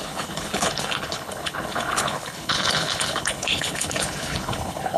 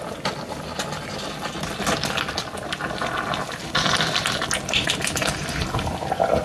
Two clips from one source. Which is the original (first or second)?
second